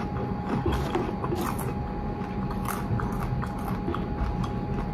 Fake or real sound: real